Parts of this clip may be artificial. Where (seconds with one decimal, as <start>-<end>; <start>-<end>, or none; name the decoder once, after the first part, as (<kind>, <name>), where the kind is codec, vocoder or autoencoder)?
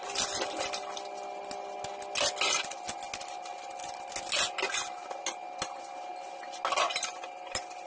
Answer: none